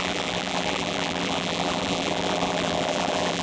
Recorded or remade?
remade